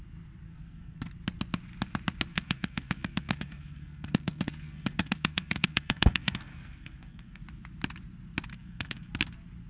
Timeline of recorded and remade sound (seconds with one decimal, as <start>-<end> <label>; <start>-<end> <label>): 0.0-0.5 recorded; 0.5-1.1 remade; 1.1-2.3 recorded; 2.3-7.4 remade; 7.4-8.5 recorded; 8.5-9.1 remade; 9.1-9.7 recorded